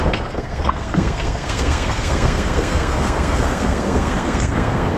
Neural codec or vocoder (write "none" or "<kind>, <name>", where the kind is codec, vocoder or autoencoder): codec, SNAC